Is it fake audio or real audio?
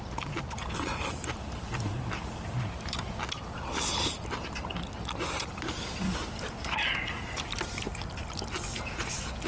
real